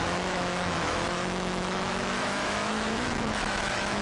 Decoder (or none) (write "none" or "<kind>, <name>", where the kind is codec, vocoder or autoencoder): autoencoder, DAC-VAE